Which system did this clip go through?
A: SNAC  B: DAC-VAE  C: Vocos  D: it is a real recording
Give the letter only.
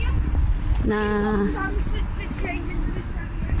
D